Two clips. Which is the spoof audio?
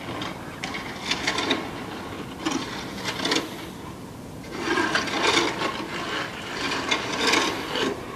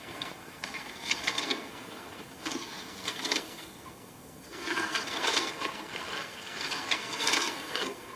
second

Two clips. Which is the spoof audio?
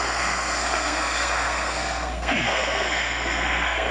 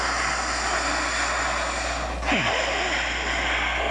first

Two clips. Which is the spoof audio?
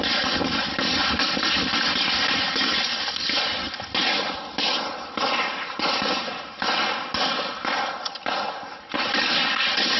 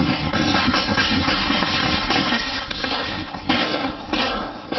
second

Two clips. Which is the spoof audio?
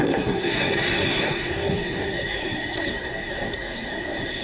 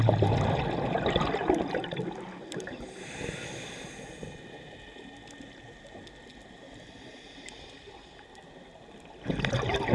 first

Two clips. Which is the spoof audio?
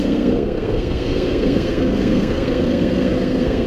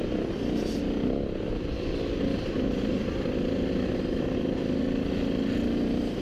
first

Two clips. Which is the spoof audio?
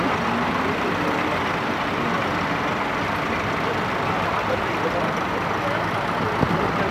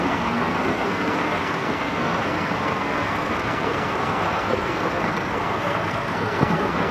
second